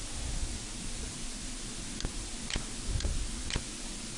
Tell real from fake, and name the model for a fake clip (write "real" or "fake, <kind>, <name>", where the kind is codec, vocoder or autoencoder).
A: real